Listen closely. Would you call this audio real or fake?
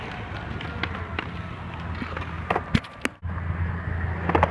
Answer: real